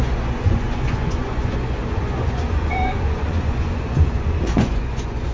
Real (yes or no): no